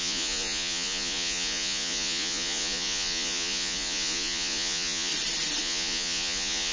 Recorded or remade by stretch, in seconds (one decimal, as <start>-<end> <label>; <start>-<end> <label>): 0.0-5.1 remade; 5.1-5.6 recorded; 5.6-6.7 remade